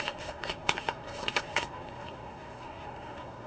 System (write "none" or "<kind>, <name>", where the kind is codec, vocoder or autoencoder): codec, SNAC